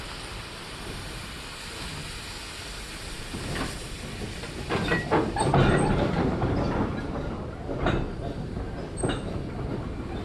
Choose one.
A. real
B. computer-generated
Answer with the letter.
B